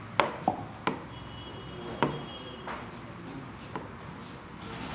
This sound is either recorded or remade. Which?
recorded